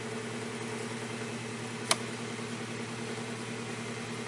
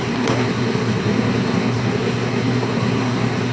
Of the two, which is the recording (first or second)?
first